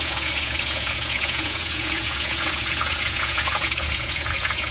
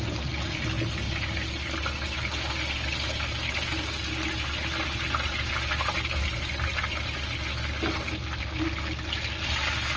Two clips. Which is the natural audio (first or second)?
second